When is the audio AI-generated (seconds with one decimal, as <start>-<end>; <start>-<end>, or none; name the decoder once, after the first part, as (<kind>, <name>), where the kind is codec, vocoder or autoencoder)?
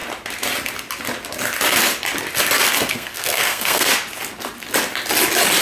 2.9-3.9 (codec, SNAC)